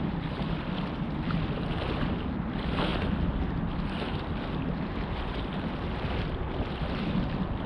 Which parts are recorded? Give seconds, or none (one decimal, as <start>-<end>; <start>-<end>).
0.0-7.7

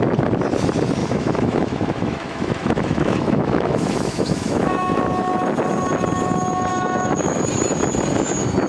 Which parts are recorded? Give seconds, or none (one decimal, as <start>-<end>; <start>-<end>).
0.0-1.0; 5.0-6.7; 7.4-8.7